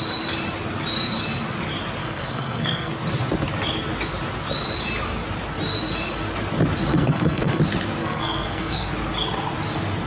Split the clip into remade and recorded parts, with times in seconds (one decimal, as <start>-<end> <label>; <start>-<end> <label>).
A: 0.0-2.0 recorded; 2.0-2.9 remade; 2.9-6.9 recorded; 6.9-7.6 remade; 7.6-8.0 recorded; 8.0-8.9 remade; 8.9-10.1 recorded